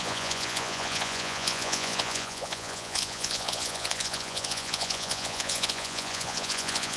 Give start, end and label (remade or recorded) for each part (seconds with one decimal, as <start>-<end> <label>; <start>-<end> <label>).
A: 0.0-7.0 remade